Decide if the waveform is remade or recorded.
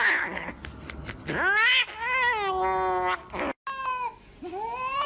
recorded